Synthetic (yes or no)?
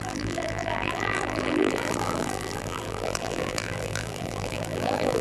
yes